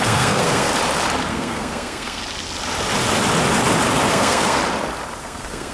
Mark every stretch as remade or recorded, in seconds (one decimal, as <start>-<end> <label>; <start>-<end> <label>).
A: 0.0-0.7 remade; 0.7-1.3 recorded; 1.3-2.2 remade; 2.2-4.1 recorded; 4.1-4.6 remade; 4.6-5.2 recorded; 5.2-5.7 remade